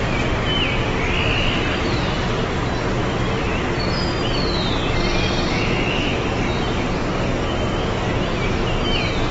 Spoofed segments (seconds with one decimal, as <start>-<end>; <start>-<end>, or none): 3.0-3.5; 5.5-6.1